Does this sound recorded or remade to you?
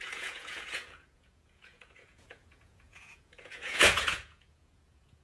remade